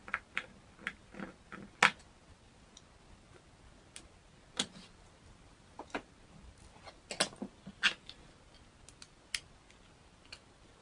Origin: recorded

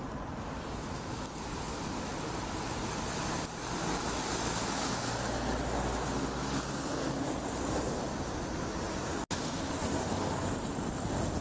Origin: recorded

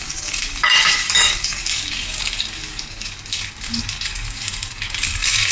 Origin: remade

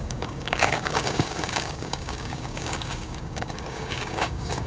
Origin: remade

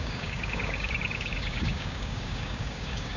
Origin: remade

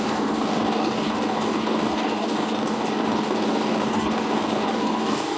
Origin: remade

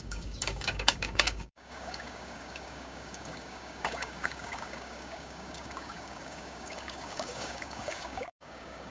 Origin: remade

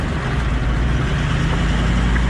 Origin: recorded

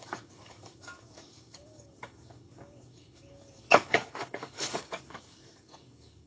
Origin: remade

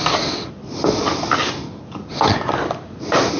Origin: recorded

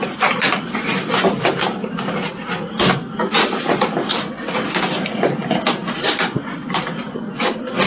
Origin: recorded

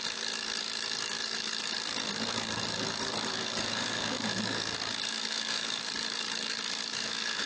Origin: remade